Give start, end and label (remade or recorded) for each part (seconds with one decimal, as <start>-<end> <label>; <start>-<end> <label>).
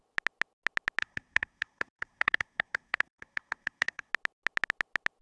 0.0-1.0 recorded; 1.0-4.1 remade; 4.1-5.2 recorded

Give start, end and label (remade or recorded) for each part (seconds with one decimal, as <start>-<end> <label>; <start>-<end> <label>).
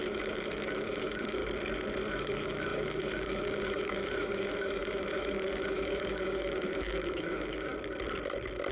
0.0-1.4 remade; 1.4-2.1 recorded; 2.1-7.7 remade; 7.7-8.7 recorded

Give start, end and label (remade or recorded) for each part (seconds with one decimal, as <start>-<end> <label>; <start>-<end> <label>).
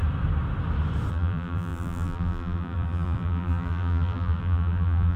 0.0-1.1 recorded; 1.1-5.2 remade